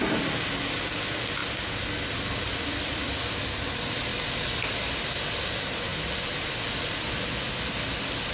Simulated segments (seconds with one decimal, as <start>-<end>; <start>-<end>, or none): none